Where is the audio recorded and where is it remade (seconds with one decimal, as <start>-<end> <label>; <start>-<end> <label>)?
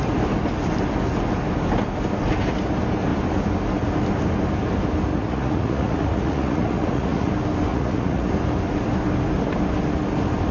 0.0-5.1 recorded; 5.1-7.3 remade; 7.3-7.7 recorded; 7.7-8.3 remade; 8.3-10.5 recorded